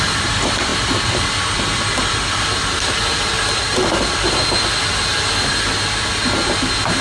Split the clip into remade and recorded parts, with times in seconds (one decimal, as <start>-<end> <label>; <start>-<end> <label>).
0.0-7.0 recorded